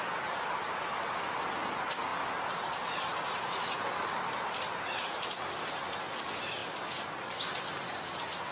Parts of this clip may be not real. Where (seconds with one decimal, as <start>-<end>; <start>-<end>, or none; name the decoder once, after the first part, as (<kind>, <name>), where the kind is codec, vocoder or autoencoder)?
none